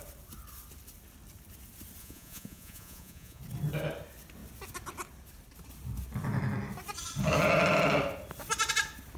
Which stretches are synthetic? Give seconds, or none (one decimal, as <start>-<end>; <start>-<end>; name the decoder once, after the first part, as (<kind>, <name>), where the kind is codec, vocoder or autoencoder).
2.0-3.4 (vocoder, Vocos)